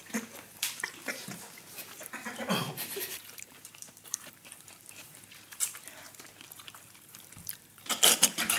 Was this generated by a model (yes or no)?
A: yes